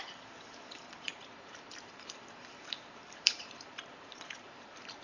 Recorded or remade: remade